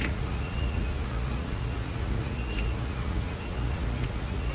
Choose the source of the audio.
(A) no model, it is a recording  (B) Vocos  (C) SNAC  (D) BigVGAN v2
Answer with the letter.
B